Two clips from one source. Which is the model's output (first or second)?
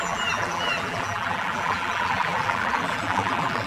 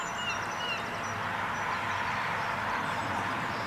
first